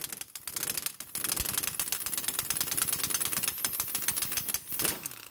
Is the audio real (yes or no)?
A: yes